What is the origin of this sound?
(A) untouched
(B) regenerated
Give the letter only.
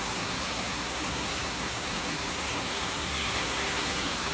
B